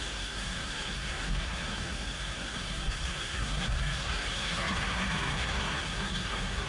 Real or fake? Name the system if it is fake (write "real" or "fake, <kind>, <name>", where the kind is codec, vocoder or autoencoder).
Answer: fake, codec, SNAC